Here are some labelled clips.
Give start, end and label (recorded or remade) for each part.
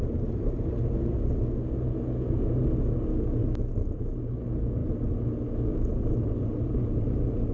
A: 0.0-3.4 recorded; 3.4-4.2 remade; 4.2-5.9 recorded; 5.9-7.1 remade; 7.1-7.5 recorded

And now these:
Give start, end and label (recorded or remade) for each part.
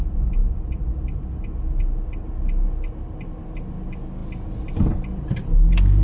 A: 0.0-6.0 recorded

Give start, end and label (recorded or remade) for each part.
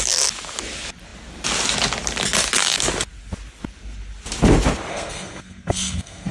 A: 0.0-4.9 recorded; 4.9-6.3 remade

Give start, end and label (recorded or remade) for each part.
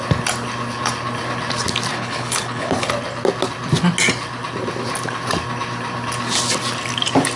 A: 0.0-1.9 recorded; 1.9-2.9 remade; 2.9-7.4 recorded